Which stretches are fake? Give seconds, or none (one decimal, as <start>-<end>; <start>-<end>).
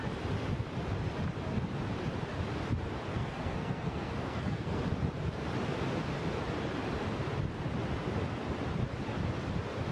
3.1-4.8